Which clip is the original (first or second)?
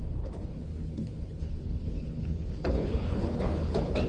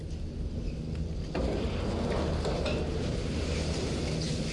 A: second